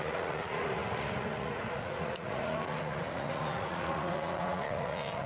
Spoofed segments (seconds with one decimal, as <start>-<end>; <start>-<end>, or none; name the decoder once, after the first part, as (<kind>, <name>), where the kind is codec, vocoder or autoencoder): 0.0-5.3 (vocoder, Vocos)